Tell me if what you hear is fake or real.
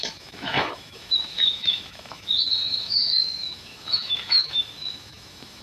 fake